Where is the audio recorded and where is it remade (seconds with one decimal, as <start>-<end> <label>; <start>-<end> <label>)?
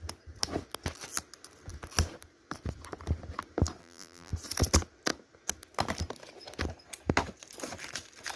0.0-3.8 recorded; 3.8-4.3 remade; 4.3-8.4 recorded